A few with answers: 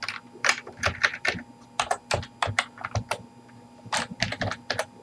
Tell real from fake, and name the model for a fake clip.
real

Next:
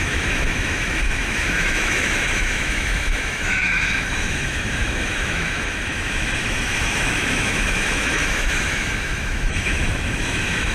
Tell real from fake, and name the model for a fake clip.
fake, autoencoder, DAC-VAE